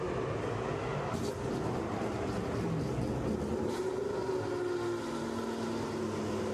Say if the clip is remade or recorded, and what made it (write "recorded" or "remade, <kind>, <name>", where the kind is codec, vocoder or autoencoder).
recorded